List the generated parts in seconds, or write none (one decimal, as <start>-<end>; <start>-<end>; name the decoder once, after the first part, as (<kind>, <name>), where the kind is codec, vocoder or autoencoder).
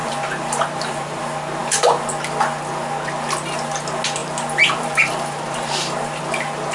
0.0-1.2 (vocoder, BigVGAN v2); 4.2-6.2